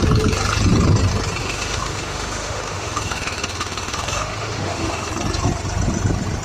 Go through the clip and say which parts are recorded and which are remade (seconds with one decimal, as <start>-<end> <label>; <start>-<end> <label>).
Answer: 0.0-1.4 recorded; 1.4-5.1 remade; 5.1-6.4 recorded